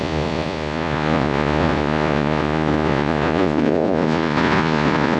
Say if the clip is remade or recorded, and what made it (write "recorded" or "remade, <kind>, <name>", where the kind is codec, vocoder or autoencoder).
remade, vocoder, Vocos